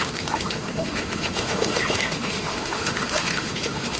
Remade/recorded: remade